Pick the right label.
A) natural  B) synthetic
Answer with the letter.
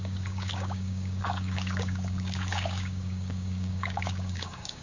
B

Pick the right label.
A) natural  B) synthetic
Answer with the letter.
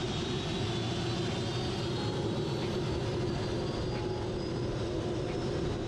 A